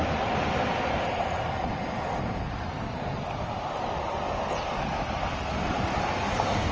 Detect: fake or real real